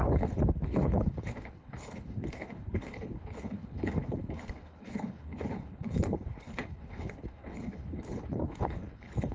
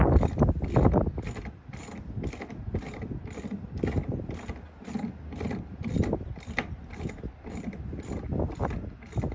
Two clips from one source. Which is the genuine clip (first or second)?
second